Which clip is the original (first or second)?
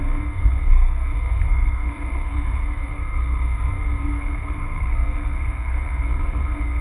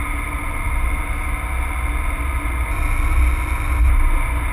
second